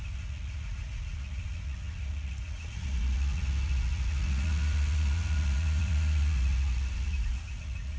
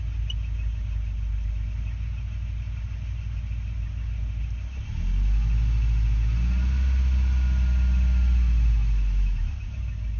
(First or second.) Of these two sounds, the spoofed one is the first